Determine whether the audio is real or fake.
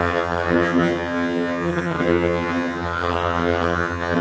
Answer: fake